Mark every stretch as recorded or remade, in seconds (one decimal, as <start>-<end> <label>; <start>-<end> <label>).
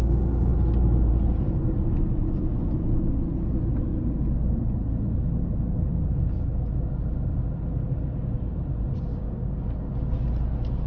0.0-9.1 recorded; 9.1-9.6 remade; 9.6-10.9 recorded